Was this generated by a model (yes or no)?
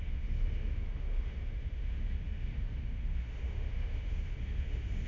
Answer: yes